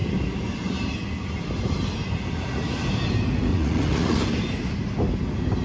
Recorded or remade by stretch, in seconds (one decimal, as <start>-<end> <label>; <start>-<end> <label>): 0.0-3.5 recorded; 3.5-4.2 remade; 4.2-5.6 recorded